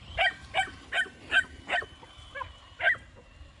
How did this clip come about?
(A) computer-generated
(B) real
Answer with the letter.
B